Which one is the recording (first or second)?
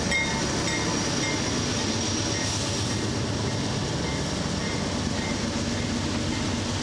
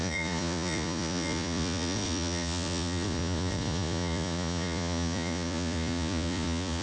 first